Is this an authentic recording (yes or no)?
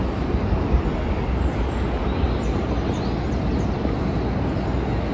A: yes